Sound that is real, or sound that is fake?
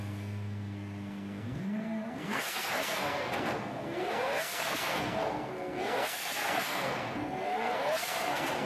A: fake